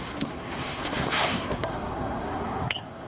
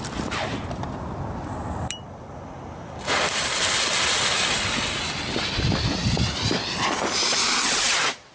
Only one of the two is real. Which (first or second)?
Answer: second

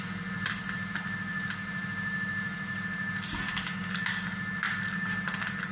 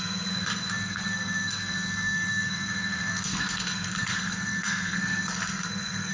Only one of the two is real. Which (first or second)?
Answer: first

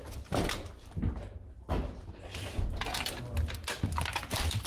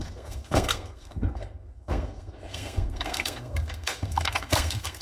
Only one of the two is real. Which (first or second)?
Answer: first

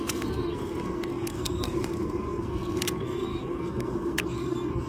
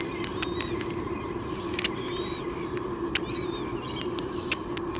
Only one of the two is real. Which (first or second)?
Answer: second